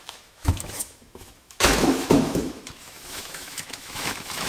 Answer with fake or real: fake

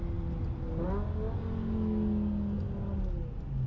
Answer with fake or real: real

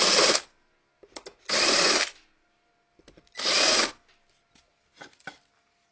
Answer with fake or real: real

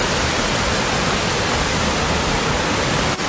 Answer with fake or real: real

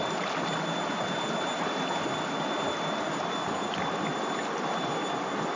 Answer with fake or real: real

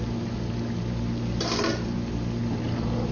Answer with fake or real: real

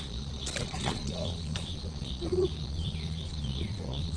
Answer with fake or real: fake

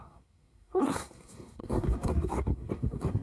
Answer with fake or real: fake